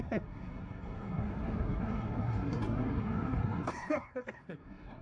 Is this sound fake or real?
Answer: fake